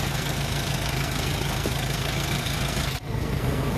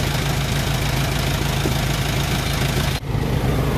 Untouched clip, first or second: second